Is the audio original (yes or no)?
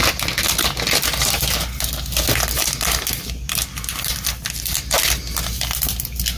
yes